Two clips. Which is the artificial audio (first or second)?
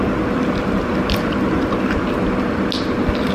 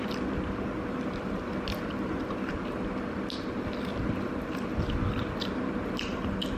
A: second